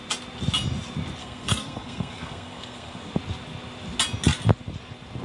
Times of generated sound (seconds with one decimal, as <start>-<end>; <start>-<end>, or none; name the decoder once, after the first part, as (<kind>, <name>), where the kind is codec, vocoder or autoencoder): 1.2-3.1 (codec, SNAC)